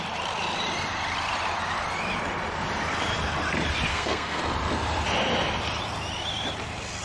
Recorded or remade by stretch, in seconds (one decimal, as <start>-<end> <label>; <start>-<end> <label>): 0.0-3.9 recorded; 3.9-4.4 remade; 4.4-7.0 recorded